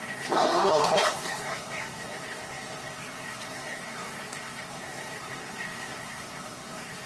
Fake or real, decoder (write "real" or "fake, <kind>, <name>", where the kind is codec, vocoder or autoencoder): fake, codec, SNAC